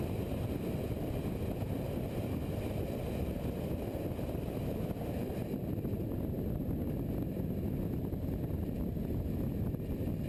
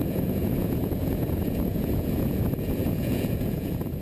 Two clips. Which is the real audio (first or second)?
first